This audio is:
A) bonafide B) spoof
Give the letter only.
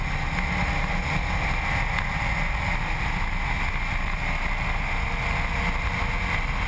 A